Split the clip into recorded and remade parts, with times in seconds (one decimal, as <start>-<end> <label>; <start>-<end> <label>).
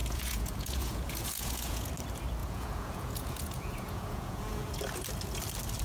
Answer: 0.0-1.9 remade; 1.9-2.4 recorded; 2.4-4.8 remade; 4.8-5.8 recorded